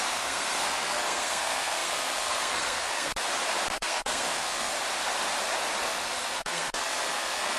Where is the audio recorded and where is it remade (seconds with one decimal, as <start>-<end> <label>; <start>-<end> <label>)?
0.0-3.1 remade; 3.1-3.7 recorded; 3.7-4.7 remade; 4.7-5.8 recorded; 5.8-7.6 remade